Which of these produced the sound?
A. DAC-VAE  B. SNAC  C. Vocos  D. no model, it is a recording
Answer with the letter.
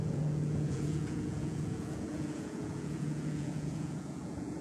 C